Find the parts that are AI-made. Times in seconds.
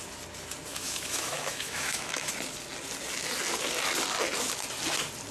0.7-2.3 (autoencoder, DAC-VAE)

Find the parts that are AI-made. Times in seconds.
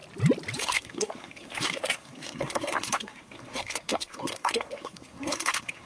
0.6-5.9 (codec, SNAC)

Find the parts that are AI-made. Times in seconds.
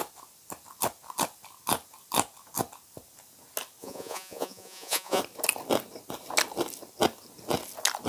3.8-5.2 (vocoder, Vocos)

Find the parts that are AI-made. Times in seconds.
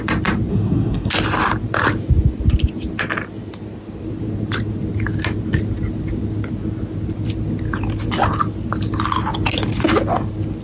0.5-1.1 (codec, SNAC)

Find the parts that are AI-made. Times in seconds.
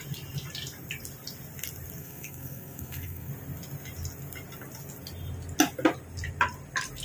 2.0-3.3 (codec, SNAC)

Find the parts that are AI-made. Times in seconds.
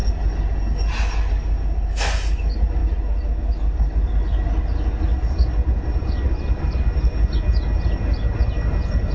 none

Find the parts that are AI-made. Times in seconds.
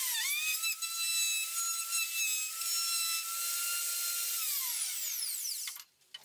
none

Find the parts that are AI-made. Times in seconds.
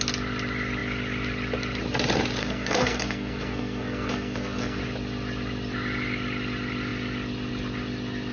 2.4-4.8 (codec, SNAC)